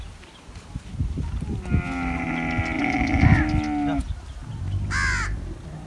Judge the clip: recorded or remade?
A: recorded